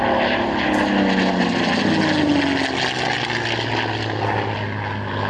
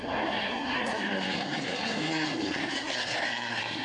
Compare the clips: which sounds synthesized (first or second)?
second